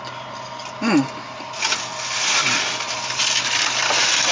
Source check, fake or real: real